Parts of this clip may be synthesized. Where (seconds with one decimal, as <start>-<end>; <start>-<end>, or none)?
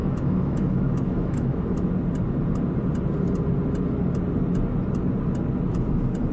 0.0-1.9